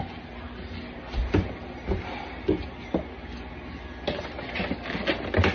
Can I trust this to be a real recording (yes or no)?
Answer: yes